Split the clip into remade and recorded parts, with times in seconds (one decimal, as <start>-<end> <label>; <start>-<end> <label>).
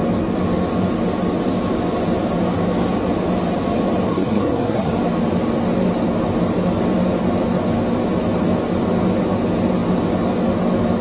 0.0-4.1 recorded; 4.1-4.9 remade; 4.9-11.0 recorded